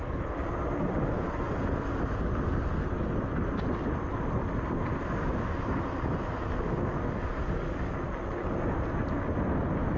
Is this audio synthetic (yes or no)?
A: no